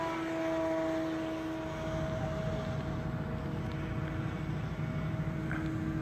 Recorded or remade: recorded